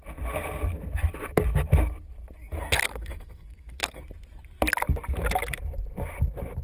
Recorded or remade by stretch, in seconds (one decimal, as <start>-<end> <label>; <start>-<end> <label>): 0.0-2.5 recorded; 2.5-4.0 remade; 4.0-6.6 recorded